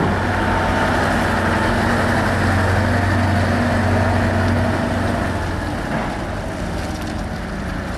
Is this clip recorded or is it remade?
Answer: recorded